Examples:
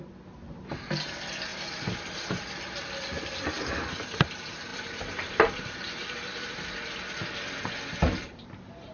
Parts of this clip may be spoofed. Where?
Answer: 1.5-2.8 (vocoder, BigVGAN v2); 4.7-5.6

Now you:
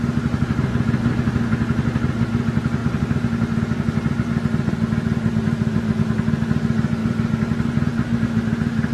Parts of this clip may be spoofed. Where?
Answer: 7.0-7.8 (vocoder, BigVGAN v2)

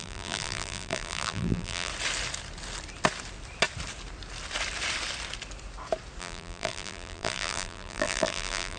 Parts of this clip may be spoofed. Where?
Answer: 0.0-1.9 (vocoder, BigVGAN v2); 6.2-8.8